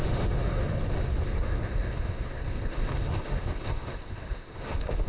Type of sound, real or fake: fake